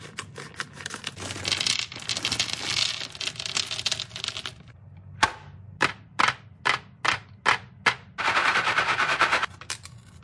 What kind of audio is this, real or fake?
real